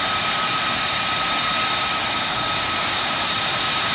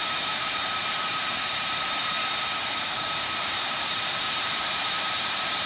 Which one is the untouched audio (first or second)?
first